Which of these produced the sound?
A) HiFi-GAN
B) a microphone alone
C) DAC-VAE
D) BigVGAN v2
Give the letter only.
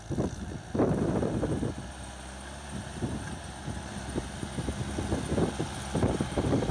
B